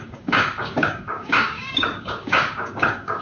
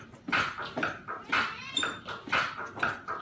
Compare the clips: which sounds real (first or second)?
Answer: second